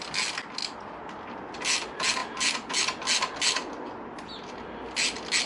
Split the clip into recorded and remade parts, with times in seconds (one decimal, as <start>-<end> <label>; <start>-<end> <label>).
0.0-5.5 recorded